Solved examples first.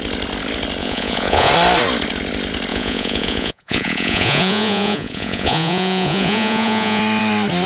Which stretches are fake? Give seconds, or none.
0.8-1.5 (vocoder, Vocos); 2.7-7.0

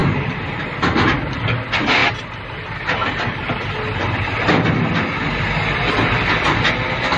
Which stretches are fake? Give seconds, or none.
none

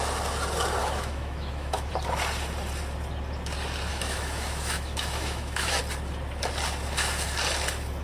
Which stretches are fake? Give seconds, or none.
0.8-1.9 (autoencoder, DAC-VAE); 3.9-5.8